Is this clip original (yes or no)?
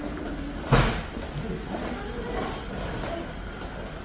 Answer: yes